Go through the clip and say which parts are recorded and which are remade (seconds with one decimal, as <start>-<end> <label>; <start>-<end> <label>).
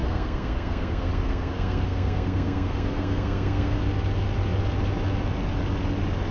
0.0-3.8 remade; 3.8-6.3 recorded